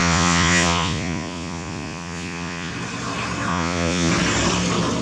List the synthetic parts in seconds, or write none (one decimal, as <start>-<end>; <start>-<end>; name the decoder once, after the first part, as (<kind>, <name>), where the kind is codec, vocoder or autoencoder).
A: 0.0-2.7 (vocoder, Vocos); 3.5-4.1